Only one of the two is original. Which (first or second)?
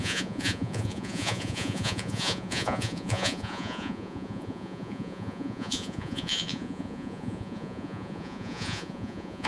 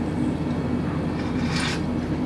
second